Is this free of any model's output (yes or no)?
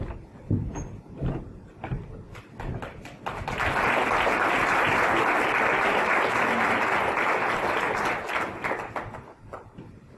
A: yes